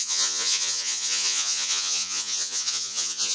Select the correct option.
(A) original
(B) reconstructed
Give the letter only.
B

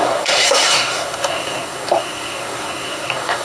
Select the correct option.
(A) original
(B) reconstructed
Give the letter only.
B